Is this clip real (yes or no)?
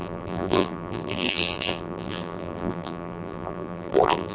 no